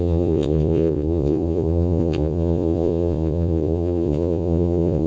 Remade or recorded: remade